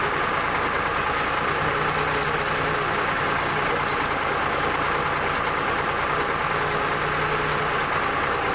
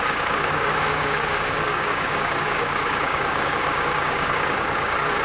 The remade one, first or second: second